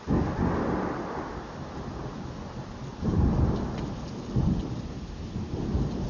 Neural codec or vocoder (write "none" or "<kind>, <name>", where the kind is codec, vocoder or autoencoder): none